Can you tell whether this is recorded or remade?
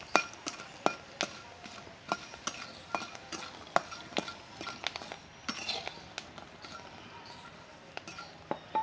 recorded